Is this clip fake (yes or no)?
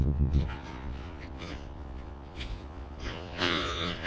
yes